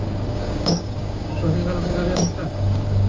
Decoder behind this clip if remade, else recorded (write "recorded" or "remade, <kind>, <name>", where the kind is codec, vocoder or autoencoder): remade, codec, DAC